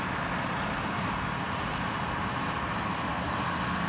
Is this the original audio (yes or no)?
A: yes